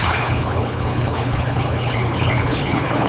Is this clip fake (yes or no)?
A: yes